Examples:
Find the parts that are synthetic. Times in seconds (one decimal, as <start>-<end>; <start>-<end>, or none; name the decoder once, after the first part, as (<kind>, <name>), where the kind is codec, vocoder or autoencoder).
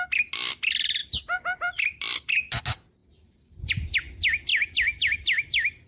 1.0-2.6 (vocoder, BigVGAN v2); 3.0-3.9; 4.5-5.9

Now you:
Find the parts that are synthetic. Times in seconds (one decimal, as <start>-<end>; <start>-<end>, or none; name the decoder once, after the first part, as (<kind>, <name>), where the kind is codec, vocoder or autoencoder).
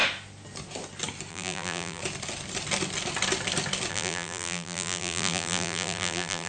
1.3-2.0 (vocoder, BigVGAN v2); 3.9-6.5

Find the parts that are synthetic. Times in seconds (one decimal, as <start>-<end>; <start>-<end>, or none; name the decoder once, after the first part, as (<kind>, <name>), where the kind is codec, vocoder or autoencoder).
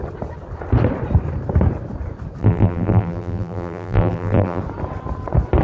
2.4-4.6 (vocoder, BigVGAN v2)